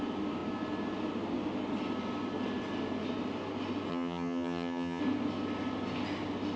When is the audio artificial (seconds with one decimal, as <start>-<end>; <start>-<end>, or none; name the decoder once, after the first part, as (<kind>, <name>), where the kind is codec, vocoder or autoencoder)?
3.9-5.0 (vocoder, HiFi-GAN)